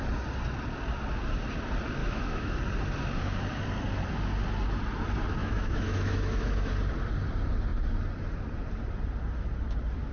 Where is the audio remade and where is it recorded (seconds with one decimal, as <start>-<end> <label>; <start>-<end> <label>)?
0.0-2.0 recorded; 2.0-2.6 remade; 2.6-5.4 recorded; 5.4-6.7 remade; 6.7-10.1 recorded